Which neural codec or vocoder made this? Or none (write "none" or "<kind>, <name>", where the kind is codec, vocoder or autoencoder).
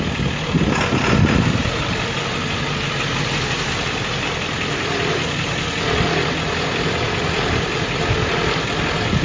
none